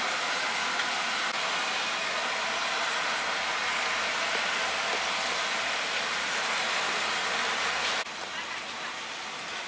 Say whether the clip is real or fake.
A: real